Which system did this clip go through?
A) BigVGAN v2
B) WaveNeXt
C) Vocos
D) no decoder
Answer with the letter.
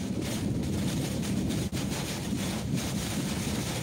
A